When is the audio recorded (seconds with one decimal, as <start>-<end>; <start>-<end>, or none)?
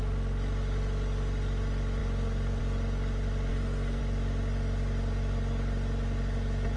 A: 0.0-3.5; 4.0-6.8